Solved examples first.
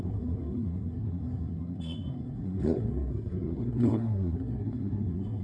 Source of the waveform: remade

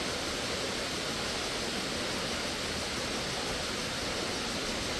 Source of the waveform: recorded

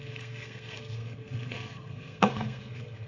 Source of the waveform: remade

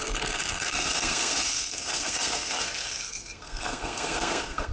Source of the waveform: remade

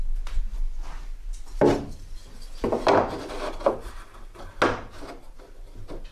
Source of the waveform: recorded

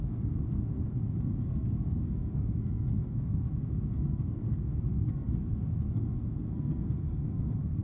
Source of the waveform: remade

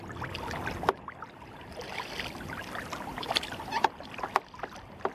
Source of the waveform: recorded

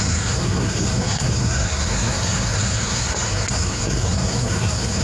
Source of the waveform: remade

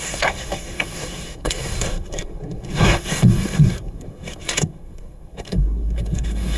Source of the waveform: remade